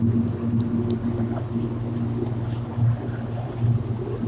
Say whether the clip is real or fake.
real